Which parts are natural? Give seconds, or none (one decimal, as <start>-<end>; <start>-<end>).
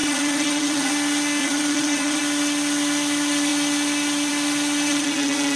0.9-1.4; 2.2-4.9